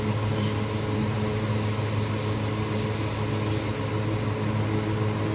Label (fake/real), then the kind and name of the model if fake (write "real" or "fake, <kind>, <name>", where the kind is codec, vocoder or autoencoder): real